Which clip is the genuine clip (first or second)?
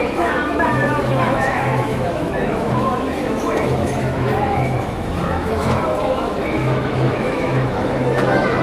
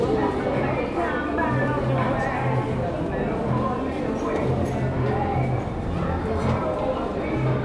second